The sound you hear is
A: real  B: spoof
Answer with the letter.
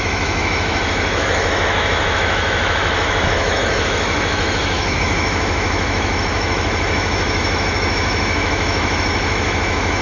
B